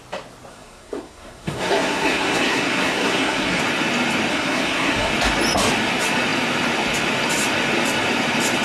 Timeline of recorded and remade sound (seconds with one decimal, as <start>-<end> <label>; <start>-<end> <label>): 0.0-0.5 recorded; 0.5-3.6 remade; 3.6-4.3 recorded; 4.3-5.1 remade; 5.1-8.6 recorded